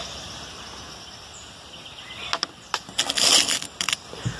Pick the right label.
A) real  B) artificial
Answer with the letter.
A